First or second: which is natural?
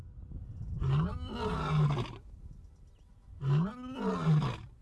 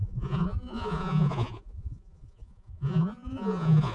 first